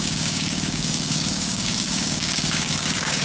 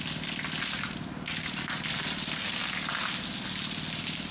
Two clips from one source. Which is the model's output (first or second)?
first